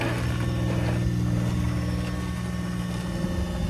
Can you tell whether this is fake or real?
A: real